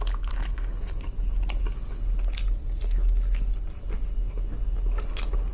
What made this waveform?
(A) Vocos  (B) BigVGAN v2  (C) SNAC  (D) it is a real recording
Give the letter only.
D